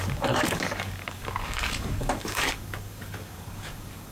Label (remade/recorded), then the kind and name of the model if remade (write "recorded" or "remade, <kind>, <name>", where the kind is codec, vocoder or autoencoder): remade, codec, DAC